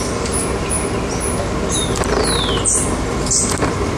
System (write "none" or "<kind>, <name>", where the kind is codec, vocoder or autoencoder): none